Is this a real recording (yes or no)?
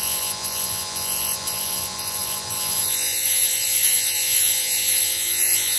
no